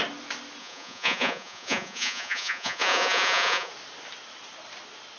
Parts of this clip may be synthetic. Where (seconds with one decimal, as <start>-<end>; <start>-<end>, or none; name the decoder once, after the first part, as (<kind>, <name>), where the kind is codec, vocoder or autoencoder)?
0.6-3.7 (vocoder, Vocos)

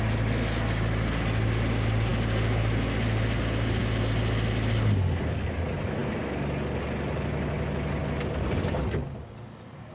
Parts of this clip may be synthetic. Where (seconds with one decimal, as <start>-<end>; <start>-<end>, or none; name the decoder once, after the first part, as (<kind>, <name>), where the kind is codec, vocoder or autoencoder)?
none